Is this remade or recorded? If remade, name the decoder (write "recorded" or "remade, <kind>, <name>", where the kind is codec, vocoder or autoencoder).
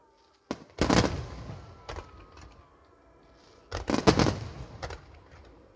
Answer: recorded